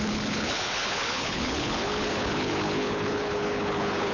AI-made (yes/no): yes